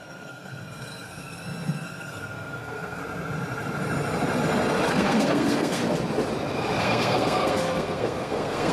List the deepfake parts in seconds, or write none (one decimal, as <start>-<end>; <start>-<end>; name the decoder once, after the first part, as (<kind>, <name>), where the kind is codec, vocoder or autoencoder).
0.0-3.0 (codec, SNAC); 4.9-5.8; 6.8-8.7